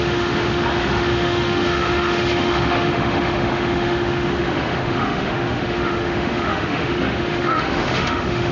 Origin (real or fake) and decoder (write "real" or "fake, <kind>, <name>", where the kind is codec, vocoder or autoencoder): fake, autoencoder, DAC-VAE